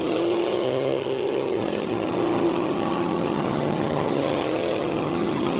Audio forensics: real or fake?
fake